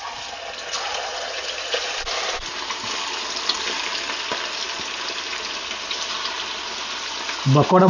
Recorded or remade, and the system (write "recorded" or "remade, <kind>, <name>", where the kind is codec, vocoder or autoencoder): recorded